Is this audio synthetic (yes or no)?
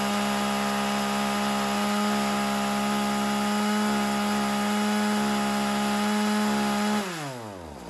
no